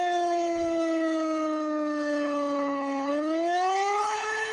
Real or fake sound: fake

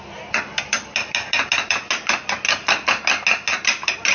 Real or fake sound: real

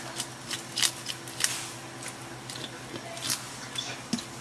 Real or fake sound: real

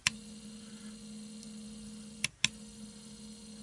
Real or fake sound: real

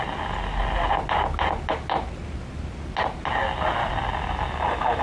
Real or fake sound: real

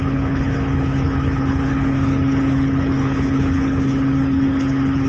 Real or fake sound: fake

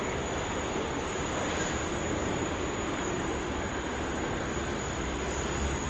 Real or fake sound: real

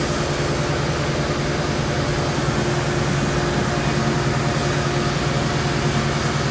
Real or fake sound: real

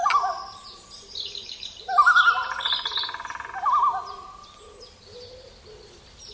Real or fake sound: real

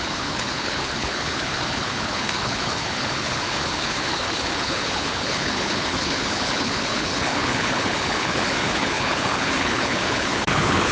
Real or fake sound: fake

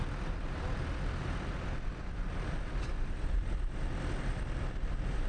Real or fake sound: real